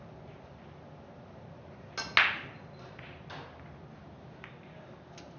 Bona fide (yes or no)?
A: yes